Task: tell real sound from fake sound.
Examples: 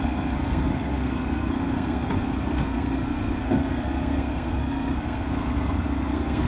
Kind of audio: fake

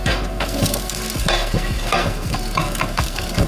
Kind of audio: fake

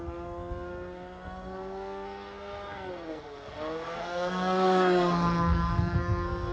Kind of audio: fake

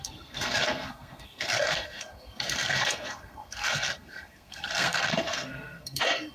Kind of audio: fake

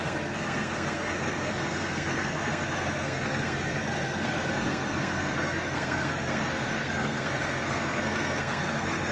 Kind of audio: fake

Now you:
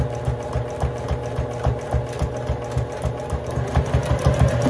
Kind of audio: real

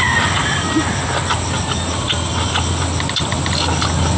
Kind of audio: real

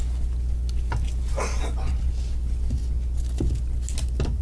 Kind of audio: real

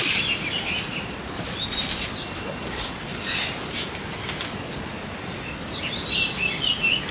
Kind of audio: real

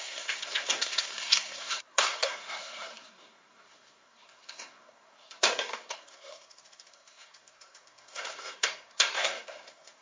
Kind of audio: fake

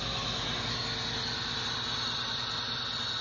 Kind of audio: real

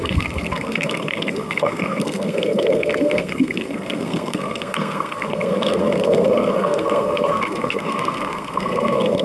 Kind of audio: fake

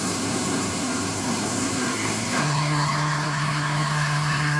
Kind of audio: fake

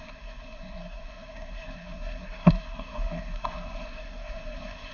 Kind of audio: fake